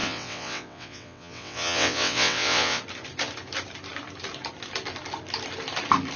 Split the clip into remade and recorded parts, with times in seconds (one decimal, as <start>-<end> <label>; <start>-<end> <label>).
0.0-2.8 remade; 2.8-6.2 recorded